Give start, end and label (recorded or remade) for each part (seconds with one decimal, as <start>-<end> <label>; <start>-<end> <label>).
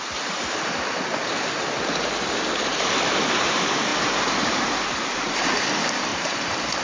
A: 0.0-1.2 remade; 1.2-2.6 recorded; 2.6-6.8 remade